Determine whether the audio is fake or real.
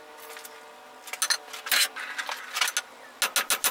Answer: real